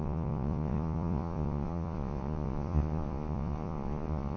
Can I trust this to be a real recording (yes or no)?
no